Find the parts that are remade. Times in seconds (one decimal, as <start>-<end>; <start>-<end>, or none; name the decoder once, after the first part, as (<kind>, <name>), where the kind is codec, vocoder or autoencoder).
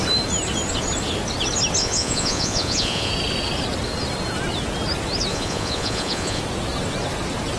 1.8-3.1 (vocoder, Vocos); 5.3-6.4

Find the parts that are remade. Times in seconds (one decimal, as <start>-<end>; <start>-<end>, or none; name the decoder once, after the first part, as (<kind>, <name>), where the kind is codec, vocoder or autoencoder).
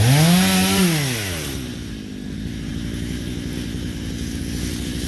none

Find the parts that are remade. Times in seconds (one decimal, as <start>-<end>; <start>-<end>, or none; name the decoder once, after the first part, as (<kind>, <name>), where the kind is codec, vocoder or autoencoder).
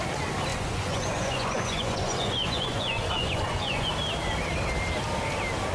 0.5-3.9 (vocoder, Vocos)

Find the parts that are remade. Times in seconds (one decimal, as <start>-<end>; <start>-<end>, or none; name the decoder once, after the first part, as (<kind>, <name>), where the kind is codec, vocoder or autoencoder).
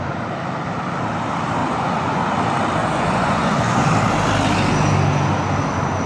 1.6-2.2 (vocoder, Vocos); 2.8-3.9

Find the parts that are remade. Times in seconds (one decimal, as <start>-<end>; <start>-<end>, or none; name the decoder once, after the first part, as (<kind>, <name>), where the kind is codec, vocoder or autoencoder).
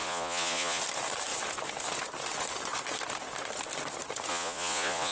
0.0-0.8 (vocoder, Vocos); 4.3-5.1